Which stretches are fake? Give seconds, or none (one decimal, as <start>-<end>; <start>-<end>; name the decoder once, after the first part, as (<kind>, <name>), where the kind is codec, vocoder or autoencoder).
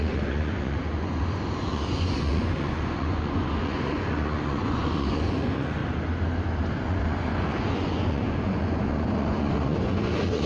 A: 0.0-5.8 (vocoder, Vocos); 6.7-10.5